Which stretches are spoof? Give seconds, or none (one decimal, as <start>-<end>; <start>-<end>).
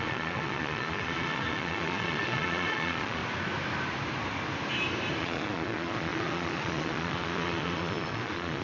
0.0-3.2; 5.2-8.6